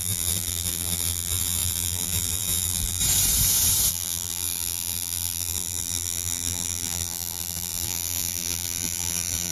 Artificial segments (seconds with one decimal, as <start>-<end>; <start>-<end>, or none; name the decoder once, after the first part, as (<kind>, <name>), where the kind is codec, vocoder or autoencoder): 0.0-3.0 (vocoder, BigVGAN v2); 3.9-9.5